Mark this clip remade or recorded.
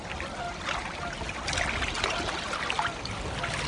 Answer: recorded